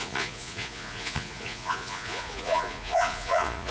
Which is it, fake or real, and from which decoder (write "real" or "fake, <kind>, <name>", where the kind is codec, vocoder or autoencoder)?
fake, vocoder, Vocos